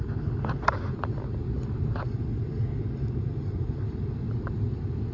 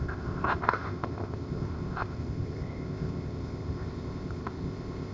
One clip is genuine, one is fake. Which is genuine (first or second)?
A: first